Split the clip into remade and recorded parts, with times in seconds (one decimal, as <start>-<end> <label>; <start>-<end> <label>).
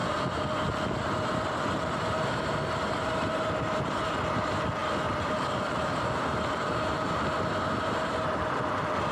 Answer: 0.0-9.1 recorded